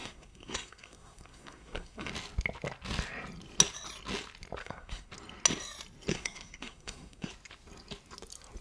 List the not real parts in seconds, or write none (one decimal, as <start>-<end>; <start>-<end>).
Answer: 0.0-2.1; 4.6-5.1; 6.1-7.3